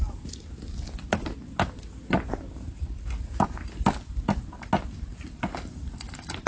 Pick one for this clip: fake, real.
real